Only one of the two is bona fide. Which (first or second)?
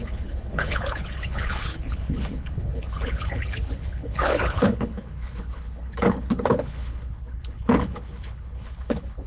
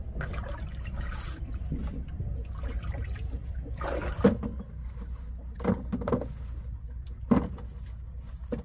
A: second